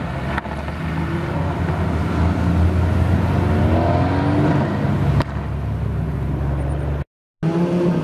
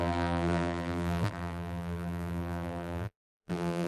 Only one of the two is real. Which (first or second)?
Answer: first